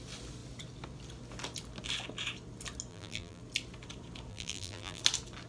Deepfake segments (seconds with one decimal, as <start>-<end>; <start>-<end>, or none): 2.9-3.4; 4.3-5.0